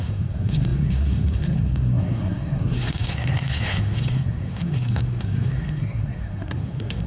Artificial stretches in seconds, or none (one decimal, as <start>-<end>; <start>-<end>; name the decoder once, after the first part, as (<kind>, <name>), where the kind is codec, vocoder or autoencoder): 0.0-7.1 (codec, SNAC)